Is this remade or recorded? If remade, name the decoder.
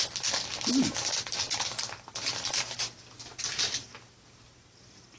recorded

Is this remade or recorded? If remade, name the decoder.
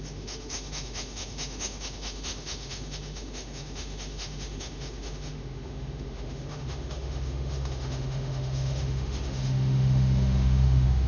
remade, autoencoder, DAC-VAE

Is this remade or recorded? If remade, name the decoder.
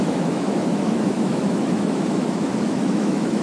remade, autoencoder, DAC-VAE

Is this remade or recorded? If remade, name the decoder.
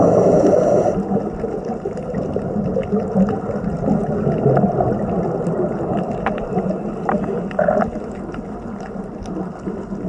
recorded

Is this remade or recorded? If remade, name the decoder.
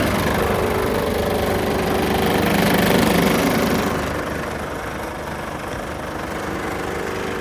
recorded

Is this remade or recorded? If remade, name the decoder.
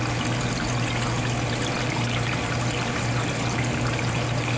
recorded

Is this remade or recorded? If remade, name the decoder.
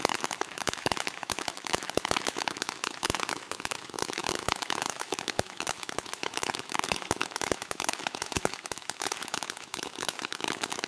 remade, autoencoder, DAC-VAE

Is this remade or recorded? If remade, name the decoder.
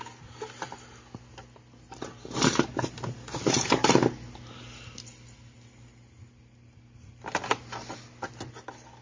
recorded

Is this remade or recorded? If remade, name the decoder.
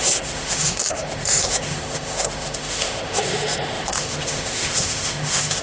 remade, autoencoder, DAC-VAE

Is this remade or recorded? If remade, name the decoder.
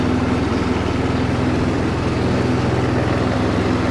recorded